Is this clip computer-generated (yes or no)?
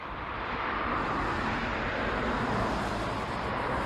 no